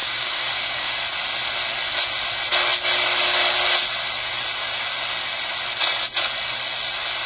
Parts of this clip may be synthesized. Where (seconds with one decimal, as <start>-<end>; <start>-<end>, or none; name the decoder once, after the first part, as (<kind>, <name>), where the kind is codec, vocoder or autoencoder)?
0.0-1.0 (codec, DAC)